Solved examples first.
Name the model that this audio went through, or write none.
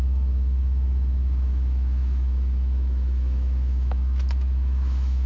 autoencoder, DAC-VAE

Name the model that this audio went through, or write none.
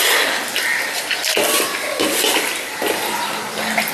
none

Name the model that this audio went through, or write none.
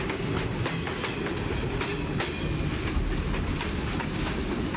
none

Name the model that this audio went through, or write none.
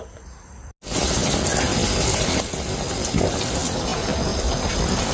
none